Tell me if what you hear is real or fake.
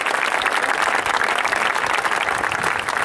real